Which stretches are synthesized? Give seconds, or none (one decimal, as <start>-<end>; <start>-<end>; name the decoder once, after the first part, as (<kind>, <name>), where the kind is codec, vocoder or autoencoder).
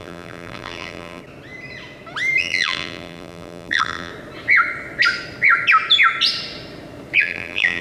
0.0-1.2 (vocoder, BigVGAN v2); 2.4-4.1; 7.2-7.8